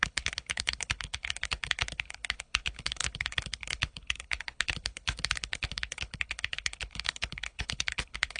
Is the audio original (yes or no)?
no